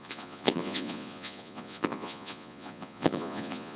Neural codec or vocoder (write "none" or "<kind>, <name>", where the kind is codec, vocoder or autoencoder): vocoder, Vocos